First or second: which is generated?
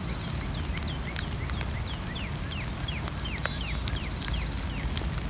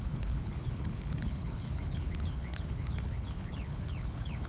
second